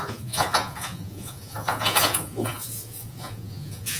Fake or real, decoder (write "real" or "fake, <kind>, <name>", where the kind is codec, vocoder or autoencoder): fake, vocoder, Vocos